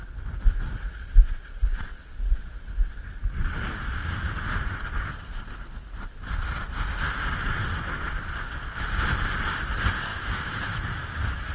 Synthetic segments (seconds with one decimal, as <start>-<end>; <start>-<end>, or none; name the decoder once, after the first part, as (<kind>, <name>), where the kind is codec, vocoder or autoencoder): 10.1-11.0 (autoencoder, DAC-VAE)